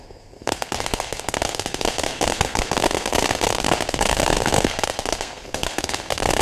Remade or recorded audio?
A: remade